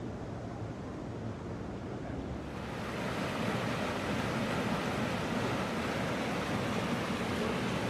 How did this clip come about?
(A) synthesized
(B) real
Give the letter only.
B